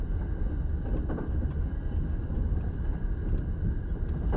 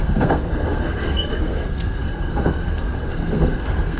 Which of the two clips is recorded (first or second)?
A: first